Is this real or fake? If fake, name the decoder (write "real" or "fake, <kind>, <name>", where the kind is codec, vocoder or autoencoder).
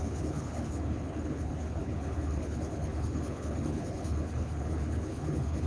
fake, codec, HILCodec